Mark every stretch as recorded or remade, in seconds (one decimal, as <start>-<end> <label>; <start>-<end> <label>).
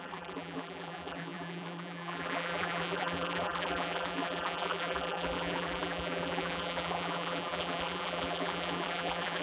0.0-9.4 remade